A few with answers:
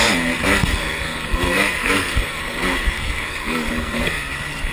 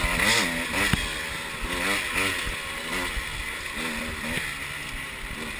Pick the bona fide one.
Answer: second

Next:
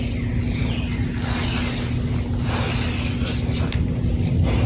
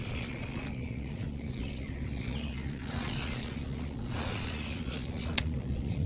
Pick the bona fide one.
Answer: first